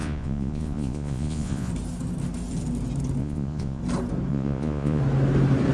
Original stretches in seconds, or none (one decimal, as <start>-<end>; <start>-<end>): 1.7-3.2; 3.8-4.3; 5.0-5.7